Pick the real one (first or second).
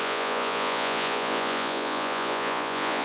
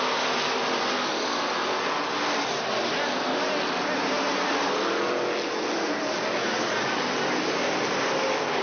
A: second